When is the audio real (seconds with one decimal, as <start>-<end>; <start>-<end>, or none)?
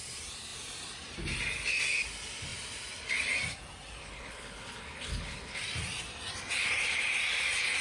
0.0-4.0; 5.6-7.8